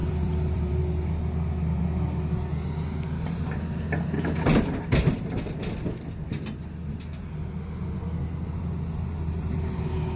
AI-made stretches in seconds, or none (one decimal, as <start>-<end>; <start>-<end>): 0.0-0.8